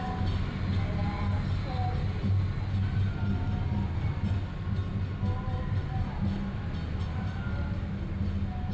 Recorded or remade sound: recorded